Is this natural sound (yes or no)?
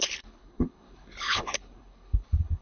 no